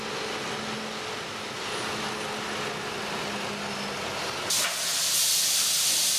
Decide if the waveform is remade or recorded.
recorded